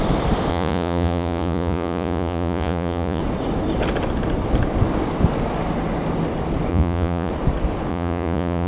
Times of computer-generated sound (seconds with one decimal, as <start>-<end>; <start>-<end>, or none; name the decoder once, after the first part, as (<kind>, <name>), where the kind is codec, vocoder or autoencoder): 0.5-3.2 (vocoder, Vocos); 6.7-7.3; 7.9-8.7